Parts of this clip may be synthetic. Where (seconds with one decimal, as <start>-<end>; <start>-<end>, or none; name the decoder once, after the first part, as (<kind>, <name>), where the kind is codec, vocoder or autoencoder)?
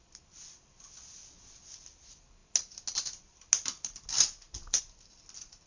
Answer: none